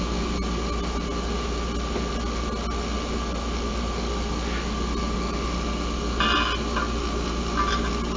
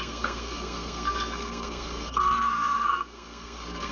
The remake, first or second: second